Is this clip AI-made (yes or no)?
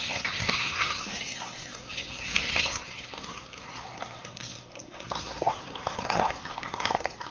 yes